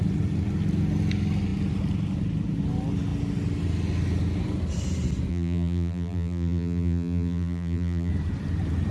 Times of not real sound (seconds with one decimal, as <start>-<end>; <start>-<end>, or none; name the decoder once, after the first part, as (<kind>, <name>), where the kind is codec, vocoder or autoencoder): 5.3-8.1 (vocoder, BigVGAN v2)